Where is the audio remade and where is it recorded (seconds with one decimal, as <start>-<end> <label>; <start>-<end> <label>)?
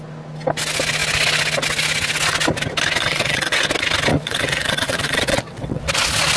0.0-3.0 recorded; 3.0-3.6 remade; 3.6-4.1 recorded; 4.1-5.9 remade; 5.9-6.4 recorded